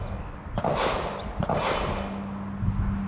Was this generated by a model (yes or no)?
no